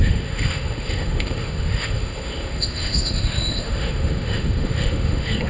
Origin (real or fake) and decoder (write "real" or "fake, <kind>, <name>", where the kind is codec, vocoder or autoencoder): fake, autoencoder, DAC-VAE